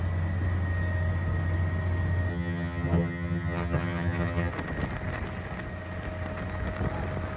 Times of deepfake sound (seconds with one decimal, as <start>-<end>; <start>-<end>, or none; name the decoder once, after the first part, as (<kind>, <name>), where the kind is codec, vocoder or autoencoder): 2.3-4.5 (vocoder, HiFi-GAN)